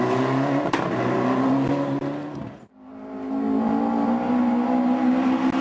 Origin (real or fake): real